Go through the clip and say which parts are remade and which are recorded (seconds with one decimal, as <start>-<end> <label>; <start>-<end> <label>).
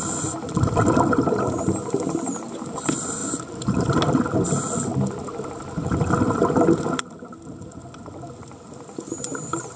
0.0-3.2 recorded; 3.2-3.9 remade; 3.9-9.8 recorded